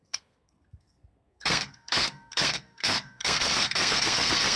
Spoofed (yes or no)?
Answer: yes